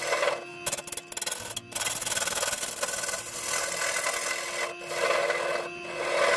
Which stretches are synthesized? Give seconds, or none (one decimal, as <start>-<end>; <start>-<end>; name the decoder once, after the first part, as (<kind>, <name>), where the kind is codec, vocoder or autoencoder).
none